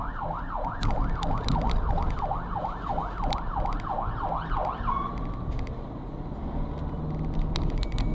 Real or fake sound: real